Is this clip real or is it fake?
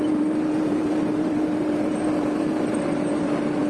fake